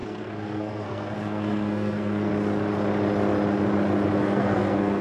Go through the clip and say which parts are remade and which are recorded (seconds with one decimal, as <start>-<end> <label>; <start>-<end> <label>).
0.0-2.3 remade; 2.3-4.1 recorded; 4.1-5.0 remade